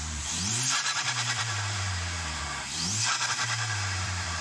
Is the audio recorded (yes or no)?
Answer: no